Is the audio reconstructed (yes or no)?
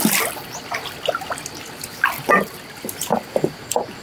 no